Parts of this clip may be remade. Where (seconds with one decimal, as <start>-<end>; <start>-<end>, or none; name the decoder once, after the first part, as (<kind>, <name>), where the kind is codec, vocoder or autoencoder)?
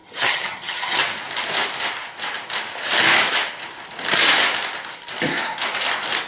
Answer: 0.0-1.0 (vocoder, HiFi-GAN)